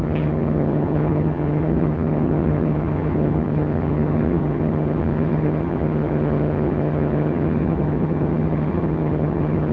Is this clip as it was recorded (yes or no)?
no